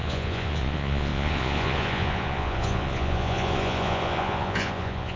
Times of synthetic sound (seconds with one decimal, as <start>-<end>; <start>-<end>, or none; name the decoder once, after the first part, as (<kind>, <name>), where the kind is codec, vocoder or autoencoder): 0.0-5.2 (vocoder, Vocos)

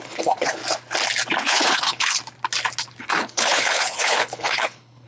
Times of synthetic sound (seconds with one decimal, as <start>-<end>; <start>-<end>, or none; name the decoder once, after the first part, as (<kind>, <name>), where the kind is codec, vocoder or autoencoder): 0.0-0.6 (codec, HILCodec); 1.4-2.2; 3.0-5.1